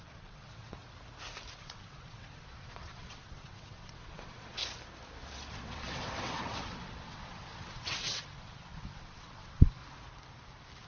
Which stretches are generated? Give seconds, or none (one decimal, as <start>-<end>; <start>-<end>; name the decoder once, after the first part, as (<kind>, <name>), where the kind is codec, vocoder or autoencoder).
0.0-0.8 (vocoder, WaveNeXt); 1.6-4.6; 5.5-9.8